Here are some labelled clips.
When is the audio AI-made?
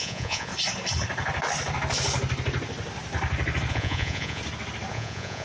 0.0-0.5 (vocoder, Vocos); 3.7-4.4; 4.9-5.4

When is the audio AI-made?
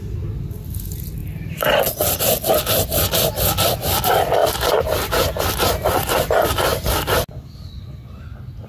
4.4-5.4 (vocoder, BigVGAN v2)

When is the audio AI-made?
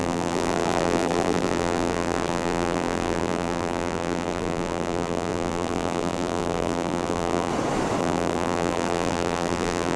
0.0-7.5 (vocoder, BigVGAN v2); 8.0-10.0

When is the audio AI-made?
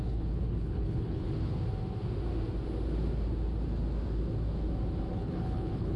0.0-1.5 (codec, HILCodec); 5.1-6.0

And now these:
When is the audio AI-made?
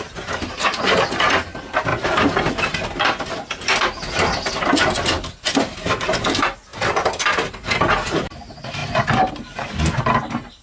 none